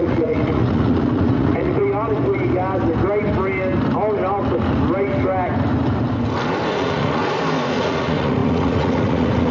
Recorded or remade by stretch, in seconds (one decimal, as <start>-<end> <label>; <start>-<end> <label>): 0.0-1.8 remade; 1.8-6.7 recorded; 6.7-7.2 remade; 7.2-7.7 recorded; 7.7-9.5 remade